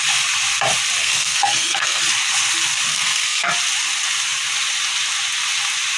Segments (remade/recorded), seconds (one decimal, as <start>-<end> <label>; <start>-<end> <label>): 0.0-1.0 recorded; 1.0-2.0 remade; 2.0-2.9 recorded; 2.9-3.5 remade; 3.5-6.0 recorded